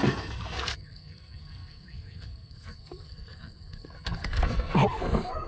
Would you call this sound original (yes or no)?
no